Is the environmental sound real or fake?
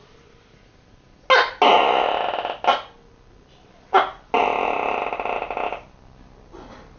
real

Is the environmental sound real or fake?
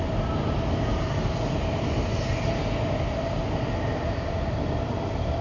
real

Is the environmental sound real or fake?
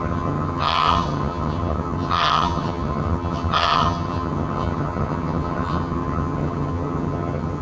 fake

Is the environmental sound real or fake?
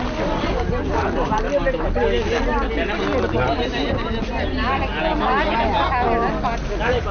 real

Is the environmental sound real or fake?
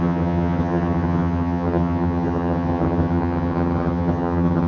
fake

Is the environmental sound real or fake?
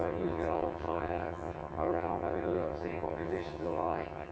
fake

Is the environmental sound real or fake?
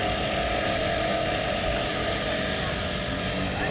real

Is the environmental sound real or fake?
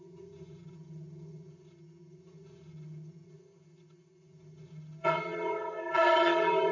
fake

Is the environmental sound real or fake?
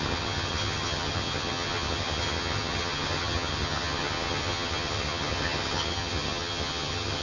fake